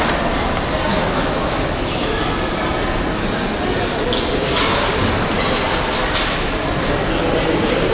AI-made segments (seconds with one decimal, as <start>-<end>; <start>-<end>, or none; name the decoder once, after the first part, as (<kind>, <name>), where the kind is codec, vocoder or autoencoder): 0.9-2.2 (autoencoder, DAC-VAE)